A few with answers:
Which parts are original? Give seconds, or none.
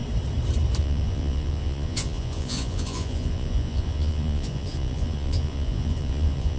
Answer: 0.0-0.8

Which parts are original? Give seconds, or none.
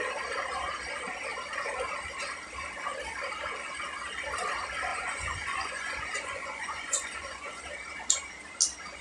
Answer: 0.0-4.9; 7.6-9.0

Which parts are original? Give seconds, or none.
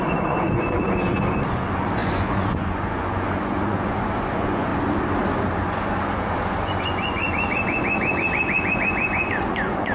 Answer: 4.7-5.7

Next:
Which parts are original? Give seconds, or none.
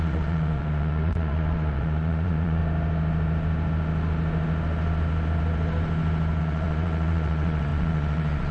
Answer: 2.6-6.4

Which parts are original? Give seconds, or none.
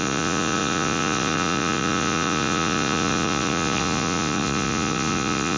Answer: none